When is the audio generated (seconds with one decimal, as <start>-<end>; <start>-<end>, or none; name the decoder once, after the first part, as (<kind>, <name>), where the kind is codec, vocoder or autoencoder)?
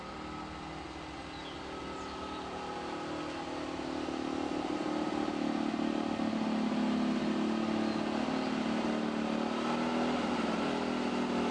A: none